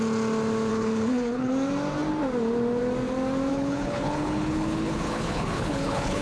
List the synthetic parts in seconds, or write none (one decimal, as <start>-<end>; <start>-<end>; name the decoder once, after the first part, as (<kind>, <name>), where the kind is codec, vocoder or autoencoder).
0.7-1.5 (codec, HILCodec); 3.5-6.2